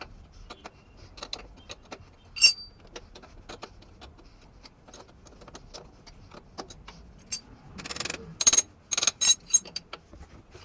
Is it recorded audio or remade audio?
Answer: recorded